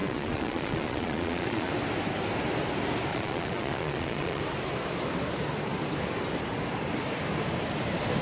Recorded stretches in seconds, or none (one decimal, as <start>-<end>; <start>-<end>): 1.7-3.1; 4.4-8.2